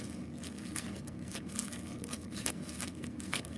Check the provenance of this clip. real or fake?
fake